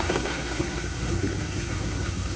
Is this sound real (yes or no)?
no